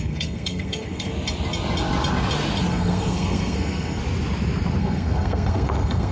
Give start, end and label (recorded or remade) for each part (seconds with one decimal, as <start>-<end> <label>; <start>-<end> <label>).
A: 0.0-1.1 remade; 1.1-2.7 recorded; 2.7-4.0 remade; 4.0-4.8 recorded; 4.8-6.1 remade